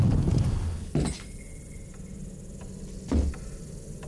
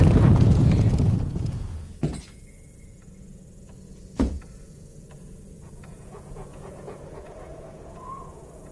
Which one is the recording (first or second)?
first